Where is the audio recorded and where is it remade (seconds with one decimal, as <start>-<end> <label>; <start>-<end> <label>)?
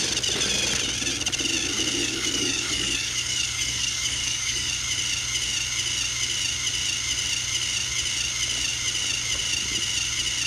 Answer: 0.0-2.0 recorded; 2.0-4.7 remade; 4.7-10.5 recorded